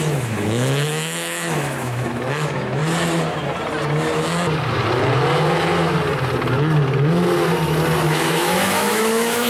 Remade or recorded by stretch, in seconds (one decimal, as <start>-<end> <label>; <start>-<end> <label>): 0.0-2.8 remade; 2.8-8.0 recorded; 8.0-9.5 remade